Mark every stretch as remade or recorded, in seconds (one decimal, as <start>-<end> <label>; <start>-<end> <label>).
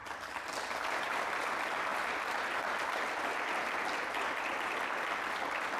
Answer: 0.0-5.8 recorded